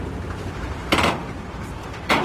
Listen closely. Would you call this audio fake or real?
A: fake